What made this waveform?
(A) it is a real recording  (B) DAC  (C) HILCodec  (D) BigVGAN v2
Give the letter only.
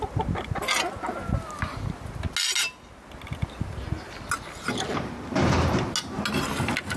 A